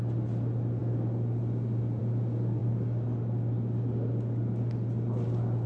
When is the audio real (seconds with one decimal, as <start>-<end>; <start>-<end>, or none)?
0.0-5.7